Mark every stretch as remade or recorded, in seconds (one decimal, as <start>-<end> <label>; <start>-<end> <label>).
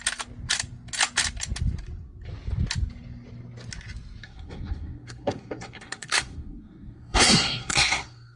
0.0-4.2 recorded; 4.2-8.4 remade